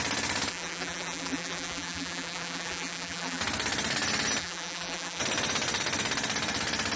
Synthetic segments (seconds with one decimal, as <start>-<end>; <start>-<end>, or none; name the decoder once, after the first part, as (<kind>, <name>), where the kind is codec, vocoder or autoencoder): 0.5-3.4 (vocoder, BigVGAN v2); 4.4-5.2